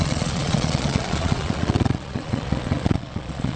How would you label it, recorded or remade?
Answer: remade